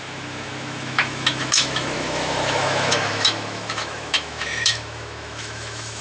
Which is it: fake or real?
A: fake